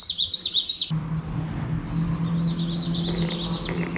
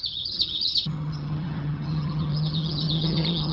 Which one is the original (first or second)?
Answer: first